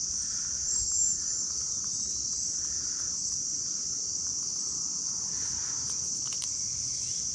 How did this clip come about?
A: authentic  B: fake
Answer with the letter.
A